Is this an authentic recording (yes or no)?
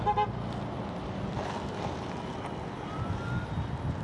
yes